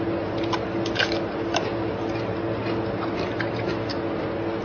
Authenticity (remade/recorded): recorded